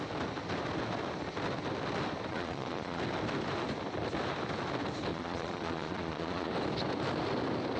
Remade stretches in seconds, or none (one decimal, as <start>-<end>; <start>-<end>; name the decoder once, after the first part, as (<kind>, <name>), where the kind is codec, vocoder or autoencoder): 2.3-3.0 (vocoder, Vocos); 5.1-6.5